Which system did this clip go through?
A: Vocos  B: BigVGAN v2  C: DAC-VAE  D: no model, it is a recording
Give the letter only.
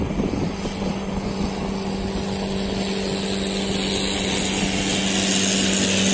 D